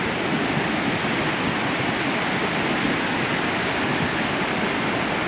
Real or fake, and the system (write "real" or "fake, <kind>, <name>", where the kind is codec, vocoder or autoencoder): real